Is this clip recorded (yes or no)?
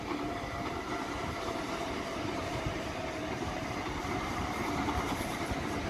no